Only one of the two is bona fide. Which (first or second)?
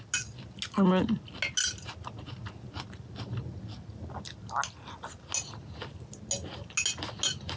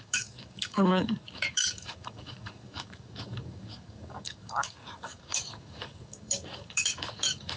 first